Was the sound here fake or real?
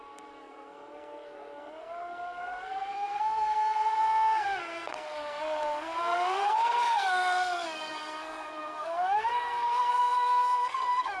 fake